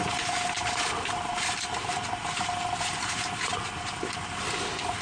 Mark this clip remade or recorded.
recorded